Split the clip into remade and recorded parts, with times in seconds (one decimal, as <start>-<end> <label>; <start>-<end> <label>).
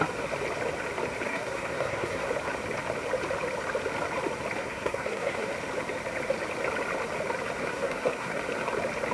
0.0-1.3 recorded; 1.3-2.3 remade; 2.3-4.6 recorded; 4.6-5.5 remade; 5.5-7.6 recorded; 7.6-8.4 remade; 8.4-9.1 recorded